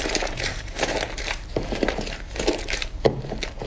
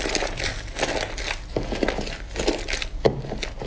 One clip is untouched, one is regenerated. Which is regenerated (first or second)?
first